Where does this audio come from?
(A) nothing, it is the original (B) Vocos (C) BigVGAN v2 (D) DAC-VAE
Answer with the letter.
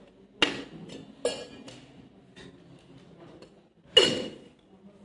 A